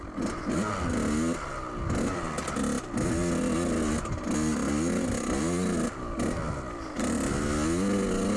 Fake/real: real